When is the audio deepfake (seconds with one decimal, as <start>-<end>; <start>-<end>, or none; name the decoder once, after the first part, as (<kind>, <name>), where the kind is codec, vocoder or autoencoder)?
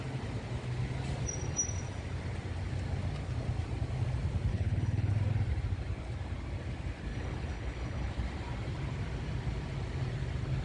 4.5-5.1 (codec, HILCodec); 7.1-8.1